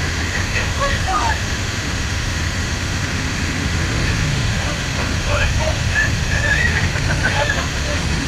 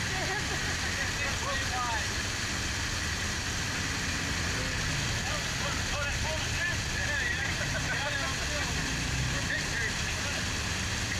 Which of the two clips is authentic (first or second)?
second